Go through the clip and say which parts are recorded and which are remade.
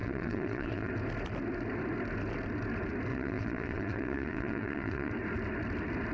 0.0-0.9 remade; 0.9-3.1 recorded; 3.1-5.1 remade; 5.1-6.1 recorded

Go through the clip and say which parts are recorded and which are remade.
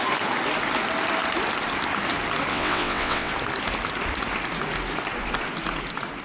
0.0-2.5 recorded; 2.5-3.3 remade; 3.3-6.2 recorded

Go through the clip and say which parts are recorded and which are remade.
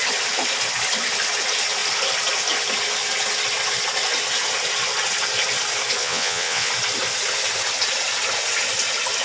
0.0-6.0 recorded; 6.0-6.7 remade; 6.7-9.2 recorded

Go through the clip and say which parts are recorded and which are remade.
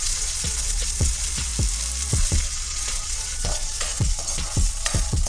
0.0-1.5 remade; 1.5-2.1 recorded; 2.1-5.3 remade